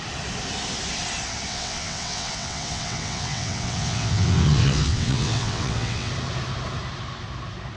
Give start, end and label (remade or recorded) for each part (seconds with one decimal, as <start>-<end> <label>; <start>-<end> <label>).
0.0-1.5 recorded; 1.5-6.1 remade; 6.1-7.8 recorded

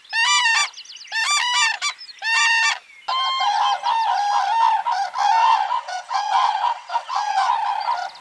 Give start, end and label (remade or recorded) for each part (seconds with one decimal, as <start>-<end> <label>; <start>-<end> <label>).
0.0-5.4 recorded; 5.4-7.5 remade; 7.5-8.2 recorded

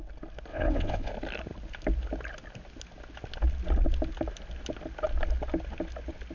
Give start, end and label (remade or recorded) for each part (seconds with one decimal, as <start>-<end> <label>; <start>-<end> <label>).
0.0-0.5 recorded; 0.5-1.1 remade; 1.1-6.3 recorded

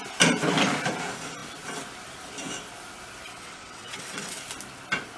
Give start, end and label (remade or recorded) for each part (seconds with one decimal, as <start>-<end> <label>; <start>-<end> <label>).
0.0-3.3 recorded; 3.3-4.4 remade; 4.4-5.2 recorded

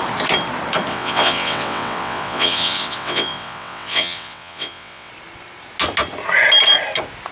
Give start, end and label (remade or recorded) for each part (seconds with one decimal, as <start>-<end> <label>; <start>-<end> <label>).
0.0-0.9 recorded; 0.9-5.1 remade; 5.1-7.3 recorded

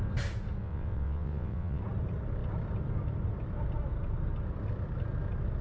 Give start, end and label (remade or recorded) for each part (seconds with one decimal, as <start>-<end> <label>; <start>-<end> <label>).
0.0-0.6 recorded; 0.6-1.8 remade; 1.8-5.6 recorded

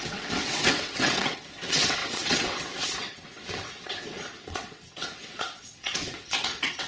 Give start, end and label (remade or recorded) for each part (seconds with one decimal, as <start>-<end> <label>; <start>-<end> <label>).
0.0-6.9 remade